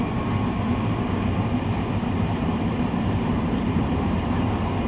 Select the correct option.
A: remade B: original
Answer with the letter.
A